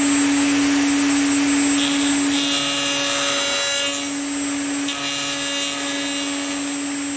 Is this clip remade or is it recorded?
recorded